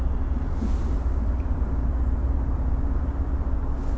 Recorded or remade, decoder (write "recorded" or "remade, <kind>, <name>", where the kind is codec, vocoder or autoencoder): remade, vocoder, BigVGAN v2